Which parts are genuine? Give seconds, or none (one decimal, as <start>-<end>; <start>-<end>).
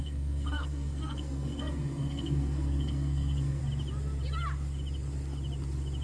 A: 3.6-6.0